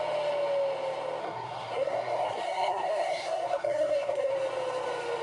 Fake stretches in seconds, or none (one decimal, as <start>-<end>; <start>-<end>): 1.2-4.3

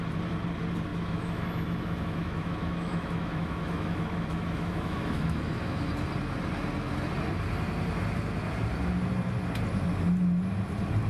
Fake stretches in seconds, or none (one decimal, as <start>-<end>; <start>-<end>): 0.9-5.9

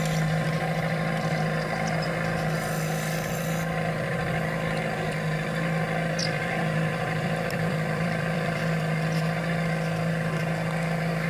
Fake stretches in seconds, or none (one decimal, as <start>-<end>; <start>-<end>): 6.2-8.6

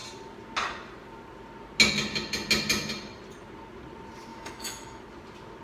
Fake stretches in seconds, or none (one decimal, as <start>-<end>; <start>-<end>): 4.3-5.0

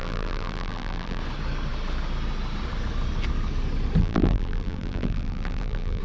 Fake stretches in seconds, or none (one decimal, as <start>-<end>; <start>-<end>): 0.0-1.2; 4.0-6.0

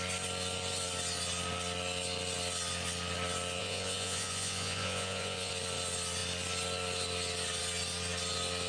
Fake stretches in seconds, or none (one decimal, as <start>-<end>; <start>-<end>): 3.6-5.5

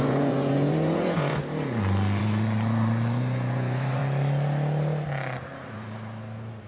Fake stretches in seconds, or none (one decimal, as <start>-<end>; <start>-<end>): 0.0-1.4; 2.2-4.0